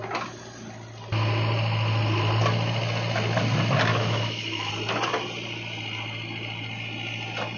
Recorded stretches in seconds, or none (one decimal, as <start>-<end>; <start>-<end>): 0.0-3.9; 4.7-7.6